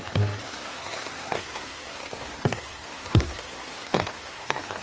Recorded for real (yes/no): no